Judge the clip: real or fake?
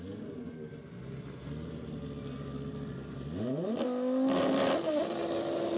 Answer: real